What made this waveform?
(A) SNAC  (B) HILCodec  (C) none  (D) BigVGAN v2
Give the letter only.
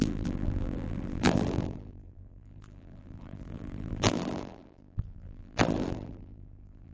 D